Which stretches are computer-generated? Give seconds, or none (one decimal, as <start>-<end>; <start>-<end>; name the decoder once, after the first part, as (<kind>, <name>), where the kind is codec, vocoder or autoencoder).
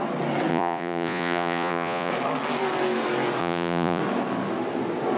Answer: 0.5-2.1 (vocoder, Vocos); 3.4-4.0